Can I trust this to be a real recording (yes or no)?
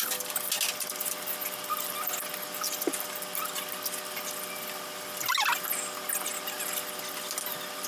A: yes